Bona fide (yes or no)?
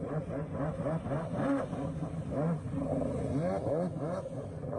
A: yes